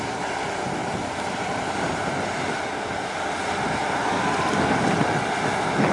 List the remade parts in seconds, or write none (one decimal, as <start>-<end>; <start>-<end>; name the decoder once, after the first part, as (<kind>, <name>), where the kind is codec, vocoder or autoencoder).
none

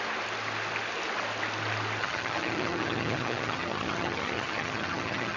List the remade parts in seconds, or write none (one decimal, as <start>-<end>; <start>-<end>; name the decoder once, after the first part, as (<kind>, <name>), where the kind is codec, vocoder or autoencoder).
2.0-5.4 (vocoder, HiFi-GAN)